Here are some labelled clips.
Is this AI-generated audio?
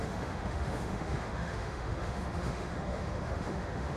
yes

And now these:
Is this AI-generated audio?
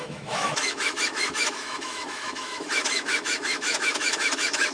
yes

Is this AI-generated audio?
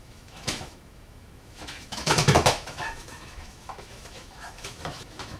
yes